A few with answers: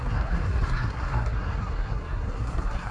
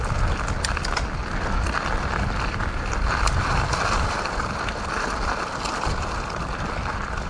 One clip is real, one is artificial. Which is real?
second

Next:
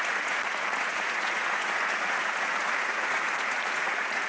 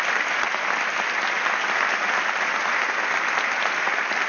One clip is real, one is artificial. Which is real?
second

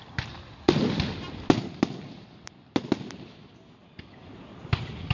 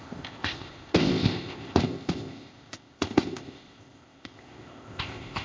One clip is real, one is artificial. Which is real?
first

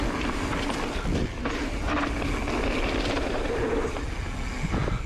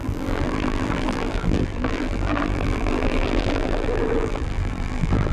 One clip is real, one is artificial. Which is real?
first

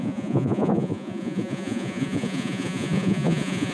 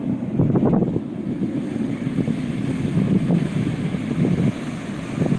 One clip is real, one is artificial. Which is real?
second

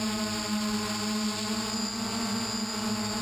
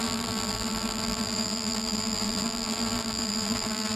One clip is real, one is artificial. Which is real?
first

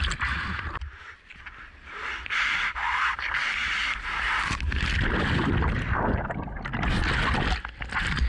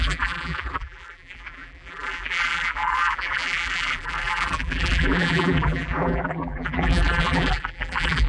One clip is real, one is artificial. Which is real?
first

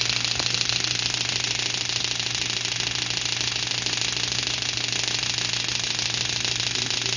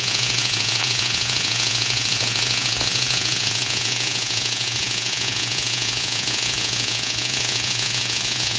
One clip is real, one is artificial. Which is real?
first